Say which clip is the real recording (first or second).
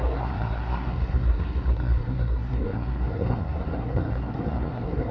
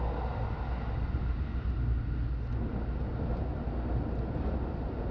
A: second